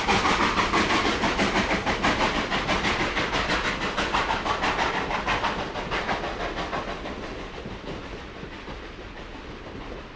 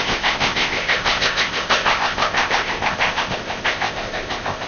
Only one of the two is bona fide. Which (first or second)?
first